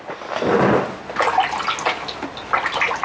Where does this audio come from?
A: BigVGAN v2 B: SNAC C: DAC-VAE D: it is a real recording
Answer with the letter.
D